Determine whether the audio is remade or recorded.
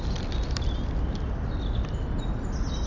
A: recorded